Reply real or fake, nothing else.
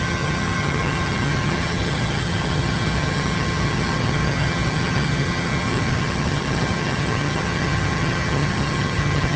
fake